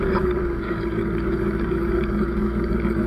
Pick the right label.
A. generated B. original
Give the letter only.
A